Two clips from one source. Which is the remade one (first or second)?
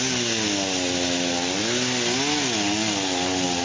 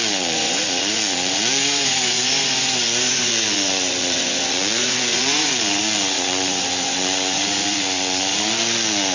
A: second